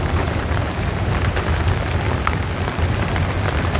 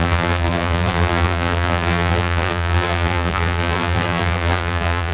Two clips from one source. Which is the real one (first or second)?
first